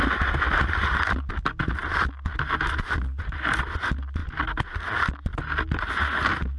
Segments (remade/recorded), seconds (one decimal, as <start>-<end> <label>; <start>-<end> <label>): 0.0-6.6 recorded